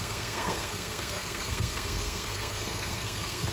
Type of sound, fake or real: fake